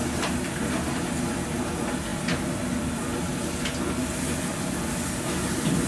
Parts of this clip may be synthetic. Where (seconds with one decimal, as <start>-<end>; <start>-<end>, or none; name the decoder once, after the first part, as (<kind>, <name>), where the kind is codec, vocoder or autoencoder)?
none